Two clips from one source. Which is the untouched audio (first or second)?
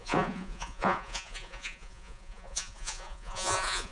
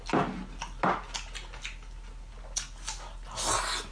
second